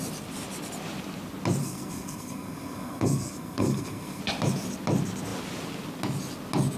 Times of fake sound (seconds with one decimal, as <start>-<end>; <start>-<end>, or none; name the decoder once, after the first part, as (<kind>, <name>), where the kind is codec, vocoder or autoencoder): 1.6-4.2 (codec, SNAC)